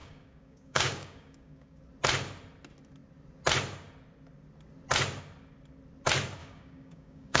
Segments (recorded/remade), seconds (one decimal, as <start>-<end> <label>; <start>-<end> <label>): 0.0-1.8 remade; 1.8-6.4 recorded; 6.4-7.4 remade